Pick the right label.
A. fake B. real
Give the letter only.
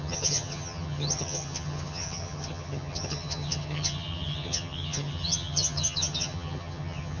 A